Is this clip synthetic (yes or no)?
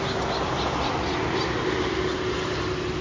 no